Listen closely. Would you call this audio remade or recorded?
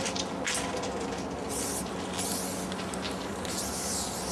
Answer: recorded